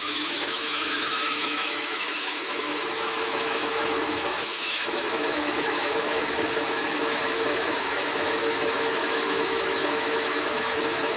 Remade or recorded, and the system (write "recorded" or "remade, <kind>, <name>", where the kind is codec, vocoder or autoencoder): remade, autoencoder, DAC-VAE